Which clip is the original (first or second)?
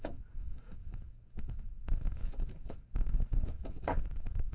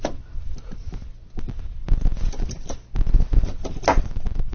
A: second